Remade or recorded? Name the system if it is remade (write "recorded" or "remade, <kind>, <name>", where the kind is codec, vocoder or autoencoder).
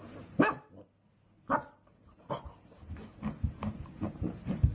recorded